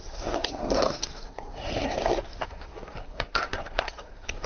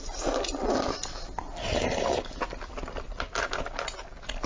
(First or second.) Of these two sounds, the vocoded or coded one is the first